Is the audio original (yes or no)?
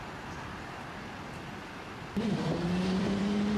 no